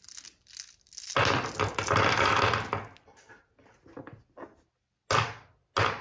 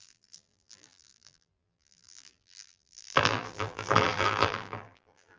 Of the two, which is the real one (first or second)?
first